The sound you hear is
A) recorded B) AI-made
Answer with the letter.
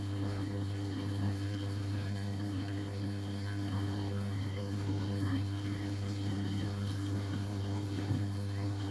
B